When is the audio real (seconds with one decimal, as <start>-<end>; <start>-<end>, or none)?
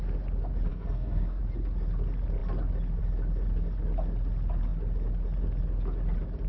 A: 0.0-0.7; 1.4-6.5